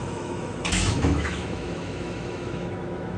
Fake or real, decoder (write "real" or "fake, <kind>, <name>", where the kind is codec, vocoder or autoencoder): fake, autoencoder, DAC-VAE